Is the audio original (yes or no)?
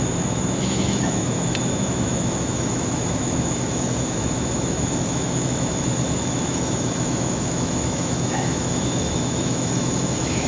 no